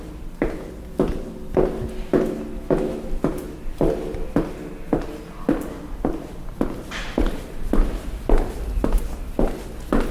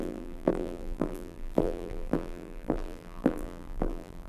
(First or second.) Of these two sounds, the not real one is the second